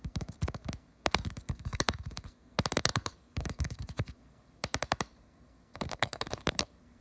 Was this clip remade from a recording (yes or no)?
yes